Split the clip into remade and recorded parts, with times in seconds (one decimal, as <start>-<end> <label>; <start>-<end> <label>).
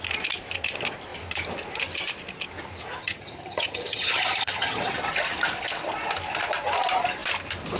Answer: 0.0-3.0 recorded; 3.0-4.9 remade; 4.9-7.8 recorded